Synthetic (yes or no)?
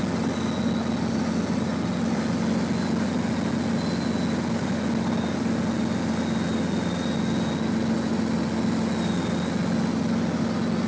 no